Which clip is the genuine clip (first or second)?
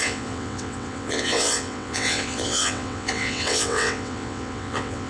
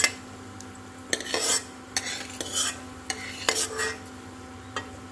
second